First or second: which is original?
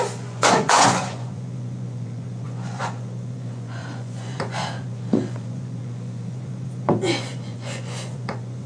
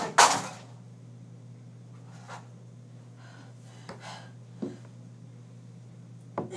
second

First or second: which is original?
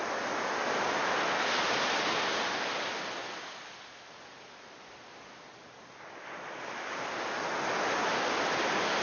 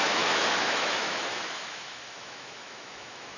first